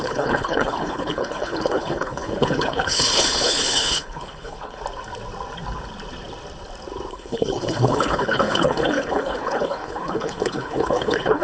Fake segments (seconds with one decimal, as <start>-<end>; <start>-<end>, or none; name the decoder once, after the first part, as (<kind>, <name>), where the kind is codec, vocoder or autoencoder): 0.0-4.8 (codec, HILCodec); 7.1-11.4